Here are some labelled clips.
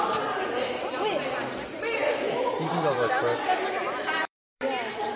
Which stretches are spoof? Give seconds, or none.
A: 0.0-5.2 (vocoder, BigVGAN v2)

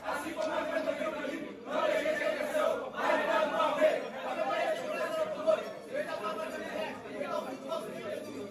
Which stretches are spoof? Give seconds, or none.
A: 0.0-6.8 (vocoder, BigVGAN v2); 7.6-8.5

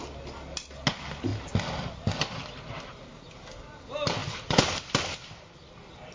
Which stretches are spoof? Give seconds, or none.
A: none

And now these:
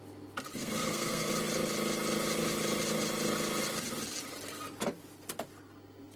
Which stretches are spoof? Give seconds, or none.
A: 0.6-1.3 (codec, SNAC)